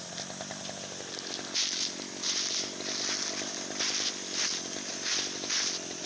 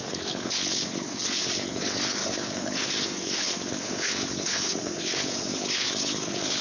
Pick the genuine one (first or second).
first